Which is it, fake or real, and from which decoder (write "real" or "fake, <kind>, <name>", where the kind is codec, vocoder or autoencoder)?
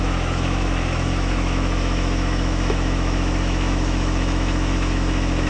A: fake, autoencoder, DAC-VAE